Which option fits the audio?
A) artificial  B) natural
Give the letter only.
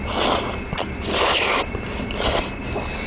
A